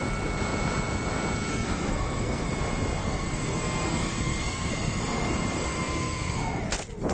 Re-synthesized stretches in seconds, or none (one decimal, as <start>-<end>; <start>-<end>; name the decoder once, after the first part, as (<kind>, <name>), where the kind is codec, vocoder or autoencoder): 1.5-2.5 (codec, SNAC); 3.0-6.6